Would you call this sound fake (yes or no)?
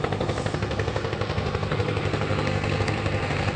yes